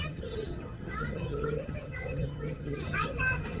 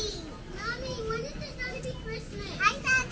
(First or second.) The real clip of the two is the second